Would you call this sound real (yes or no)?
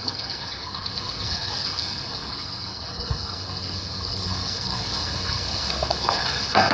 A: no